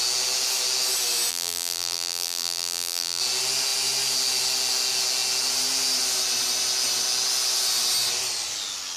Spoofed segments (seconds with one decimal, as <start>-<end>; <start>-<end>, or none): 1.3-3.2